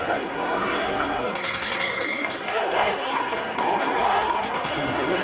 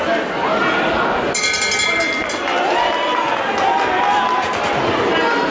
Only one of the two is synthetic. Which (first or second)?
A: first